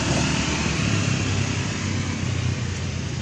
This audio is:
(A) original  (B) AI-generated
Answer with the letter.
A